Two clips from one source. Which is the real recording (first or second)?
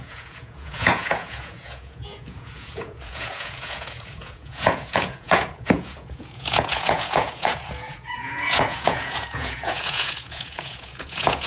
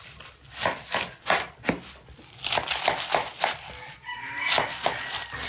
second